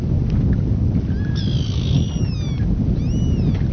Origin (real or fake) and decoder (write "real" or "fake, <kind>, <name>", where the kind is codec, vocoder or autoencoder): real